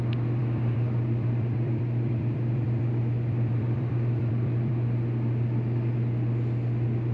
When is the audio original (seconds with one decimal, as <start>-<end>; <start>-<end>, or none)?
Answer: 0.0-0.4; 4.7-7.1